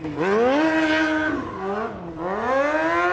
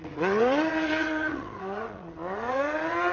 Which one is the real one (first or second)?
first